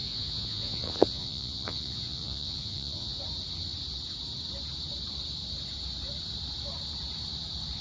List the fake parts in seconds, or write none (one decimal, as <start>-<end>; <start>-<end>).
0.0-3.2